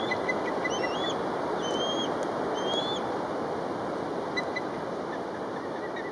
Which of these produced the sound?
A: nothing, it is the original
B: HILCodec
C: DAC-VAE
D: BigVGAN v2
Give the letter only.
A